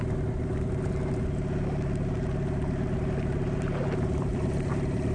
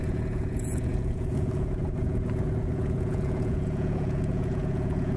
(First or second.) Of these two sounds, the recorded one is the first